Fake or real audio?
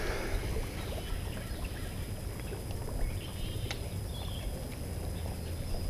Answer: real